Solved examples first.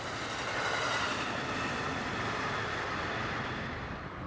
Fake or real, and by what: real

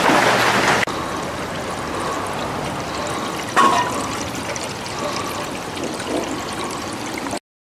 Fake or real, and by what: real